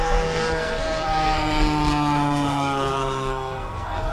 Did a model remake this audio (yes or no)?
yes